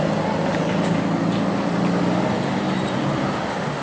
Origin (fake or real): real